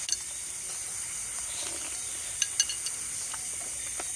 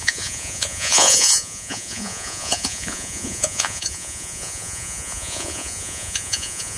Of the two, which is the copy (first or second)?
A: second